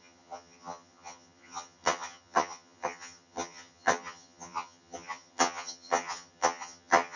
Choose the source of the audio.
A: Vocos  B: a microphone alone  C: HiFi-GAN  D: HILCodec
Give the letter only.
C